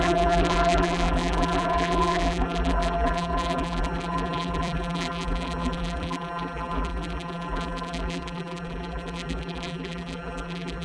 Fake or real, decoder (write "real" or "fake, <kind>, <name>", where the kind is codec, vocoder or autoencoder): fake, vocoder, BigVGAN v2